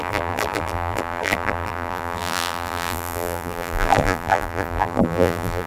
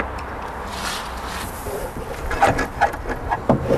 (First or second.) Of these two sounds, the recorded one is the second